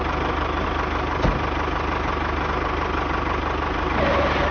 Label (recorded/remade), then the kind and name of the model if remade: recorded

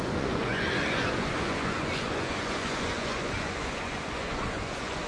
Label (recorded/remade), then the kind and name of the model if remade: remade, vocoder, Vocos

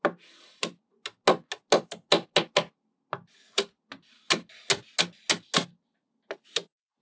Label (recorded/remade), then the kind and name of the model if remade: recorded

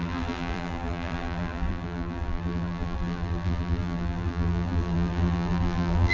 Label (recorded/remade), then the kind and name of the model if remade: remade, vocoder, BigVGAN v2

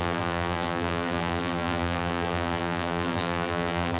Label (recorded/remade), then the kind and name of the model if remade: remade, vocoder, BigVGAN v2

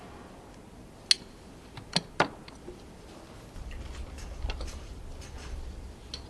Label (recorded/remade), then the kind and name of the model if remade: recorded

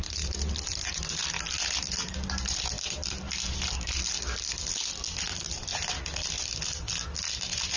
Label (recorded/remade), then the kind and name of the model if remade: recorded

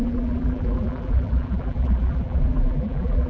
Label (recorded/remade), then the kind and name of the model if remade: remade, vocoder, BigVGAN v2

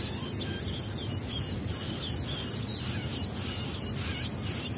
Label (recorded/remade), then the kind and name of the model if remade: recorded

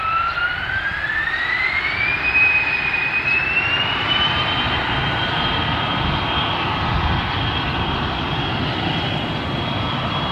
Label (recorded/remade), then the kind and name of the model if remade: remade, vocoder, BigVGAN v2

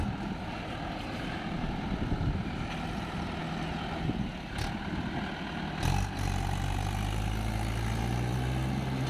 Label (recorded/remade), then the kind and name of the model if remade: recorded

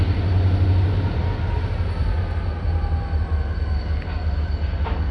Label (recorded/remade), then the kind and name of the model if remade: recorded